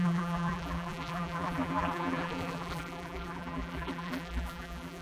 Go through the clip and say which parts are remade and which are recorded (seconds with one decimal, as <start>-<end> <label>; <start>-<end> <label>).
0.0-5.0 remade